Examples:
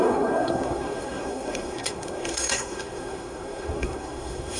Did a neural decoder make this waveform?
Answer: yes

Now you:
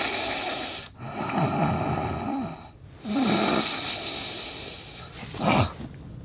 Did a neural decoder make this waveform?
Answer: yes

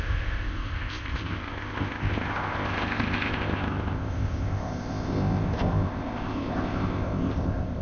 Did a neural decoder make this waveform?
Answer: yes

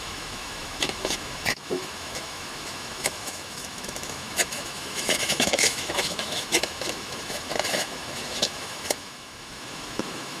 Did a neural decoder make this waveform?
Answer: yes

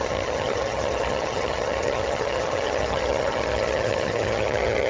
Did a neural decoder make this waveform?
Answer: yes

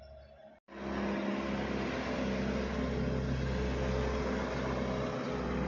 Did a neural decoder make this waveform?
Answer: no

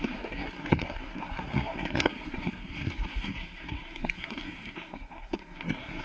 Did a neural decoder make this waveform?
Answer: yes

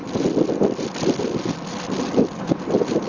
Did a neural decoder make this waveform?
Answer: no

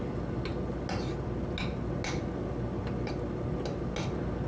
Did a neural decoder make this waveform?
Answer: no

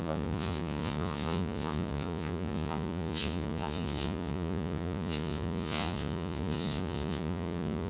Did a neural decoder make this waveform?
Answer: yes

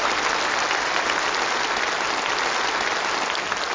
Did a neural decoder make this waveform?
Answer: no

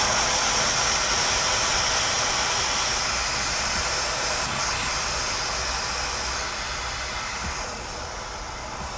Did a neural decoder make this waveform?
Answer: no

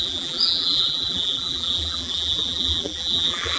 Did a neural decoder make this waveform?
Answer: yes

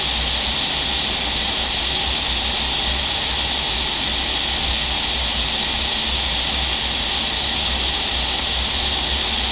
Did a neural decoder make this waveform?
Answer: no